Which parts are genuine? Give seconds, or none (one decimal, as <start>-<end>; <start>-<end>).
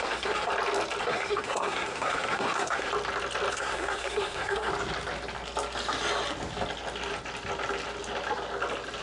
0.5-1.0; 2.9-3.5; 4.7-9.0